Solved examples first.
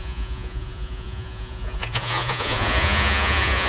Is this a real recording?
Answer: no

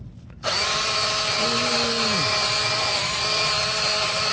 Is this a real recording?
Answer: yes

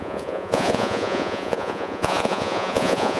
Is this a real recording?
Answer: no